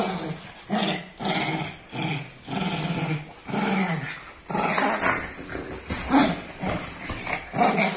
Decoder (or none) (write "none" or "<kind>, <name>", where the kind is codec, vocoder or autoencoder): none